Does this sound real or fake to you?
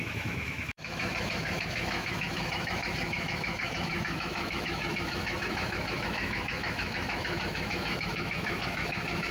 fake